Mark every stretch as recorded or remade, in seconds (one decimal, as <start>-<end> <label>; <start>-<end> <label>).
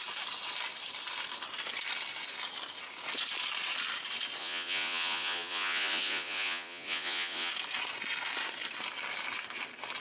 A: 0.0-4.4 recorded; 4.4-7.5 remade; 7.5-10.0 recorded